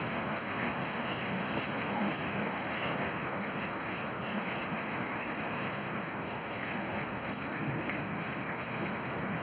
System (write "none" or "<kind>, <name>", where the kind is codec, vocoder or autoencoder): autoencoder, DAC-VAE